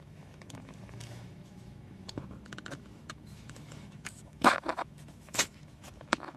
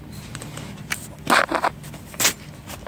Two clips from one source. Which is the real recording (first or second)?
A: second